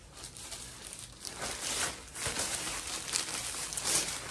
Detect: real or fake real